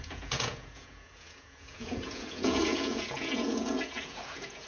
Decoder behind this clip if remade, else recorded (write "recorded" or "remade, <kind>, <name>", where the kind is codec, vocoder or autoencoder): remade, vocoder, Vocos